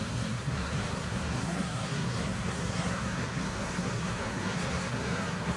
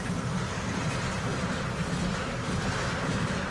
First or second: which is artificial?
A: first